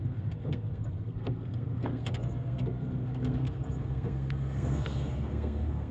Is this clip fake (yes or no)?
yes